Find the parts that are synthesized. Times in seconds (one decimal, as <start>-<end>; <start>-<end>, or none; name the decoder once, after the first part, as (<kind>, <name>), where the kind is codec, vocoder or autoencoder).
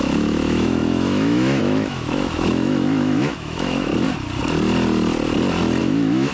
0.0-3.9 (autoencoder, DAC-VAE); 5.8-6.3